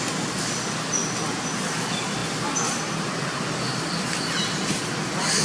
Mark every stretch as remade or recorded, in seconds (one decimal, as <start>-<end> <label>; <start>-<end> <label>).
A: 0.0-5.4 recorded